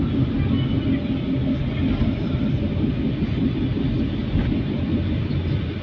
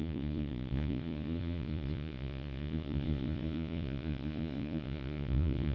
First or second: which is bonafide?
first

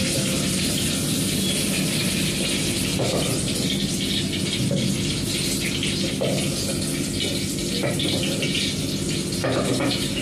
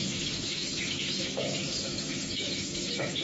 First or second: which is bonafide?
first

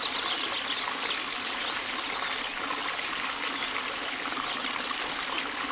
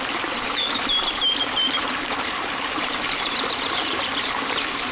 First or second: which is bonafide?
first